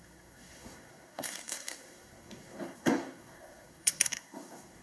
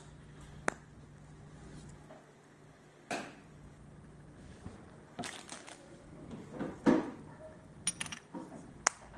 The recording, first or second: second